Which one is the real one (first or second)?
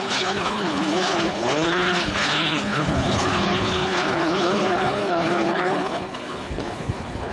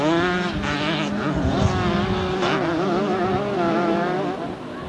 second